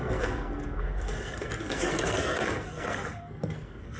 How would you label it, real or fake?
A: fake